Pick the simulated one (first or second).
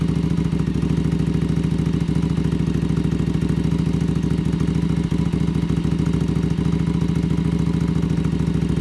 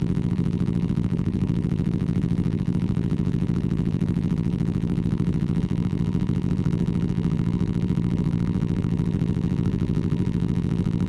second